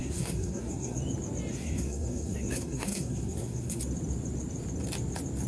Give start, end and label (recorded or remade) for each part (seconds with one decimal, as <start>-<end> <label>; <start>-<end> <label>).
0.0-1.0 remade; 1.0-1.5 recorded; 1.5-3.8 remade; 3.8-5.5 recorded

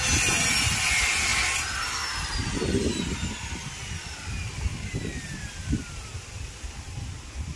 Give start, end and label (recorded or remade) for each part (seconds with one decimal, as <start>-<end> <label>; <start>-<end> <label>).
0.0-7.6 recorded

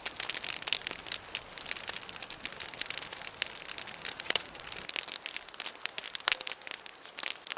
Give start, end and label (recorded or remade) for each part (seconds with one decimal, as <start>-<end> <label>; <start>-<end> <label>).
0.0-4.1 recorded; 4.1-4.7 remade; 4.7-7.6 recorded